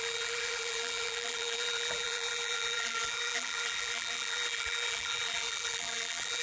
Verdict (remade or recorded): remade